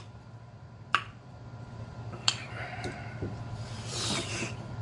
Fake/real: fake